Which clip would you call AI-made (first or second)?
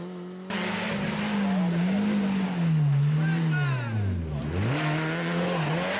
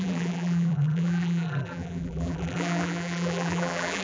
second